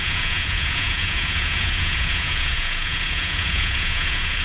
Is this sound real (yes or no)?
no